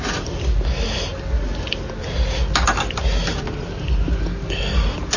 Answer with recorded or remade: recorded